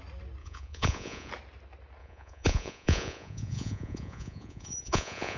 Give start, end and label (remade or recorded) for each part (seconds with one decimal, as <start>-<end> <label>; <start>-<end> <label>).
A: 0.0-0.4 recorded; 0.4-1.3 remade; 1.3-2.0 recorded; 2.0-5.4 remade